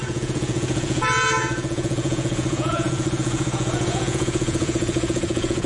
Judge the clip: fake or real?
fake